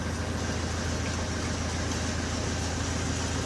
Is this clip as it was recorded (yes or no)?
yes